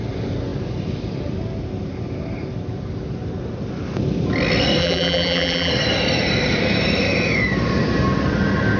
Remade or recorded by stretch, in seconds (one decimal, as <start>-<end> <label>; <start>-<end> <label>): 0.0-4.8 recorded; 4.8-5.7 remade; 5.7-8.8 recorded